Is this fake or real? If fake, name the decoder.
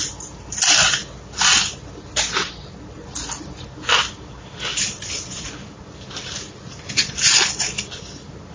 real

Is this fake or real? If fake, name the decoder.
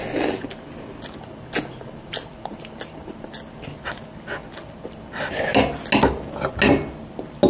real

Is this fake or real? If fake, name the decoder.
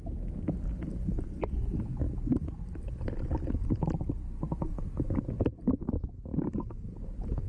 real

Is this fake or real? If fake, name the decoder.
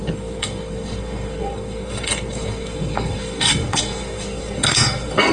fake, codec, SNAC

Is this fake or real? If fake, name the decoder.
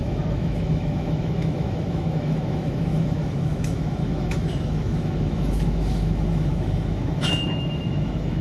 fake, autoencoder, DAC-VAE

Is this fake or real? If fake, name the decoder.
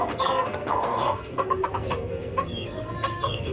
fake, codec, SNAC